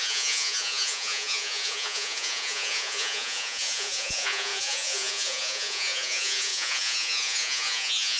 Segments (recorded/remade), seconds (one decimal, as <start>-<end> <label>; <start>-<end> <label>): 0.0-8.2 remade